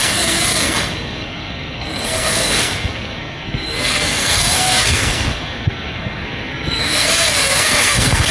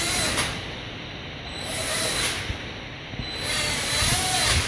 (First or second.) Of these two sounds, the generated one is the first